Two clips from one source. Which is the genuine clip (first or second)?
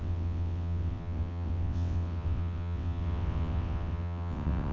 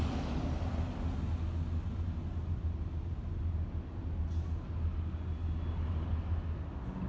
second